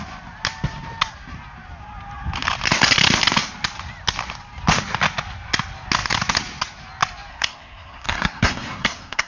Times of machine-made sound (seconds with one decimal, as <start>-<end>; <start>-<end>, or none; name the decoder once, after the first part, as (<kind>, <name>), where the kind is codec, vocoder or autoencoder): 7.3-9.3 (codec, SNAC)